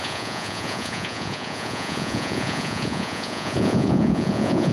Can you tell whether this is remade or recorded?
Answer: remade